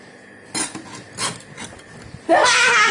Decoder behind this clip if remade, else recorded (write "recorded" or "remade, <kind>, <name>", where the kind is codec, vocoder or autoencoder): recorded